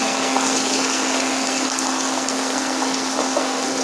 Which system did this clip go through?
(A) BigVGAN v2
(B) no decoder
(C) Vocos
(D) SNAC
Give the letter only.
D